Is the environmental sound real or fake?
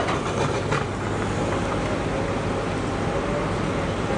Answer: real